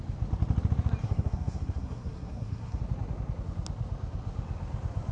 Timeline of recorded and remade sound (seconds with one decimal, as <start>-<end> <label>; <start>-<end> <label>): 0.0-1.0 recorded; 1.0-2.8 remade; 2.8-5.1 recorded